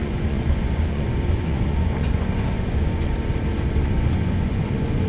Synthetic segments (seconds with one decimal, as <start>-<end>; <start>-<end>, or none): 0.0-3.1; 3.5-5.1